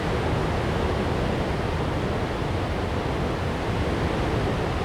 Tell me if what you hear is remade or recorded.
recorded